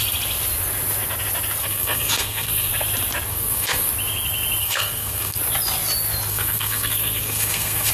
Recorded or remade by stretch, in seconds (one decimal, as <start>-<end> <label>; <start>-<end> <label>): 0.0-1.6 recorded; 1.6-2.7 remade; 2.7-3.3 recorded; 3.3-3.9 remade; 3.9-4.6 recorded; 4.6-5.4 remade; 5.4-6.3 recorded; 6.3-7.9 remade